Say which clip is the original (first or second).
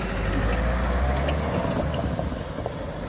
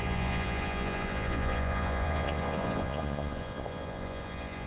first